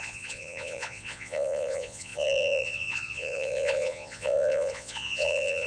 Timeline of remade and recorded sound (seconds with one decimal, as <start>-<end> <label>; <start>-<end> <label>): 0.0-5.7 remade